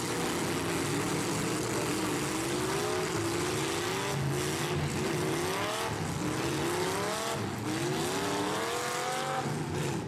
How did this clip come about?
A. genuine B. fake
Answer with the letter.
A